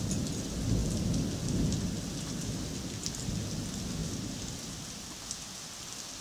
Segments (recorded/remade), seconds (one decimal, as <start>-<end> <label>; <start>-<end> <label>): 0.0-6.2 recorded